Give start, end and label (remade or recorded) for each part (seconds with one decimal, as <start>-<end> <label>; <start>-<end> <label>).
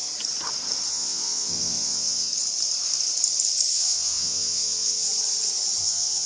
0.0-0.9 recorded; 0.9-2.3 remade; 2.3-3.7 recorded; 3.7-5.1 remade; 5.1-5.8 recorded; 5.8-6.3 remade